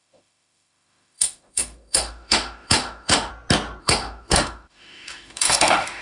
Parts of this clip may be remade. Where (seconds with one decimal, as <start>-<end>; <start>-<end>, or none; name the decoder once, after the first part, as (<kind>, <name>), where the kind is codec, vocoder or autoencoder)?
0.0-3.3 (autoencoder, DAC-VAE); 3.8-6.0